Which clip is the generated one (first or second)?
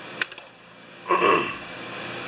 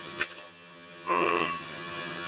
second